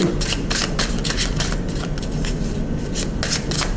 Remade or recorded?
recorded